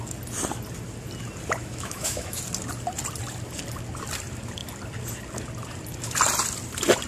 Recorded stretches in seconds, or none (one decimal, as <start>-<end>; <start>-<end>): 0.0-1.6; 2.4-7.1